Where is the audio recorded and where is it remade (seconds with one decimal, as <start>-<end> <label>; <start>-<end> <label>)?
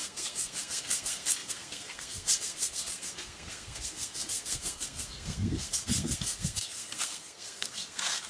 0.0-8.3 remade